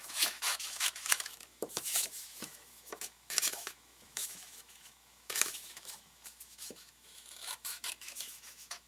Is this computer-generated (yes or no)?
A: yes